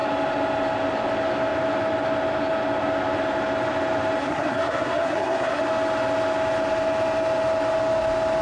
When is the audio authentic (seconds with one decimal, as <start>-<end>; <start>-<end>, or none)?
0.0-4.2; 5.6-8.4